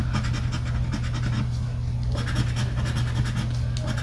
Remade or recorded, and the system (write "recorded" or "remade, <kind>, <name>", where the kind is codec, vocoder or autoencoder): recorded